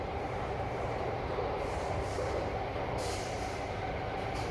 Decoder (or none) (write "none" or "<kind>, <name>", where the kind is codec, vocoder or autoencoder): vocoder, BigVGAN v2